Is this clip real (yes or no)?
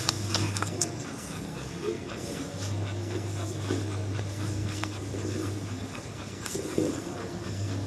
no